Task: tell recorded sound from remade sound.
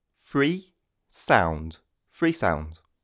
recorded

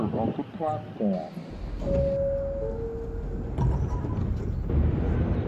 recorded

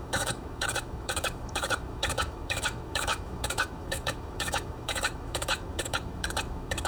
remade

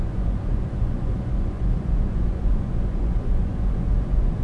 remade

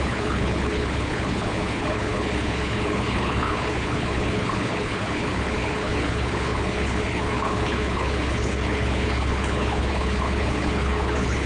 remade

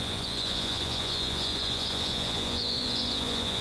remade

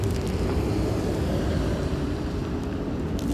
recorded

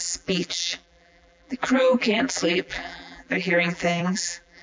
remade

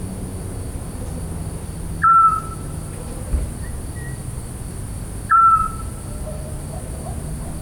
recorded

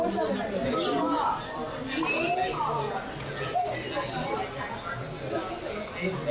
recorded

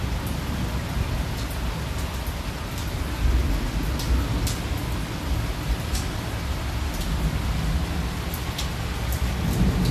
recorded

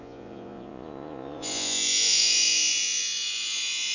remade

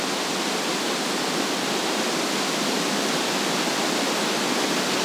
recorded